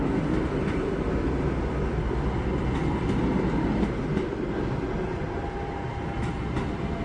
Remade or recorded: recorded